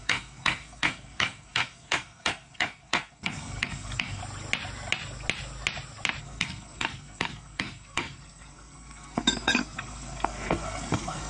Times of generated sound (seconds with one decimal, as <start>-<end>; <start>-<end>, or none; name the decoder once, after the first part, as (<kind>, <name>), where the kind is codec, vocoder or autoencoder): 0.0-4.2 (codec, SNAC); 6.2-11.3